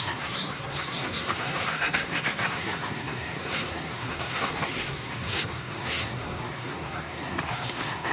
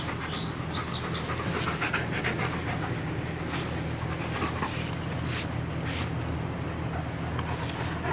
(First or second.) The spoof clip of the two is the first